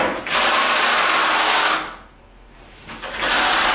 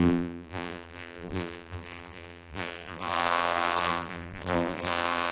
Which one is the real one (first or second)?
first